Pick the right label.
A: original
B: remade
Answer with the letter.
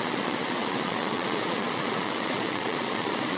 B